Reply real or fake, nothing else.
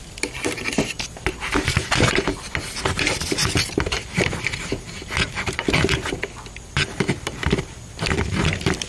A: fake